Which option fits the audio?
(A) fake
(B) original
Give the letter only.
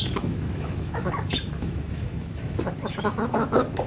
A